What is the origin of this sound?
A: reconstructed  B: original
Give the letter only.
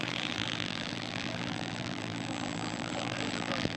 A